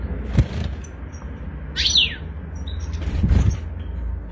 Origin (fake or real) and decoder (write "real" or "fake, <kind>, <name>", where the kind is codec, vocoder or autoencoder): real